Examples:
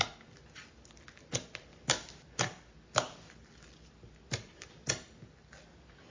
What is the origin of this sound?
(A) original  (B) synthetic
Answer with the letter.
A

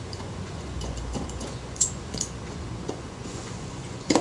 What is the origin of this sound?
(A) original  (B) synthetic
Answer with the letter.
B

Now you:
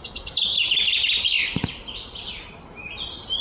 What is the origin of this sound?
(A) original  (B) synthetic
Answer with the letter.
A